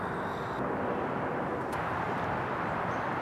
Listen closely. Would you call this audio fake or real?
fake